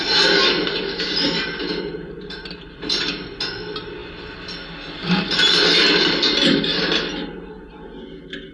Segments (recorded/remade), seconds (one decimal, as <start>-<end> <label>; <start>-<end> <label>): 0.0-8.5 recorded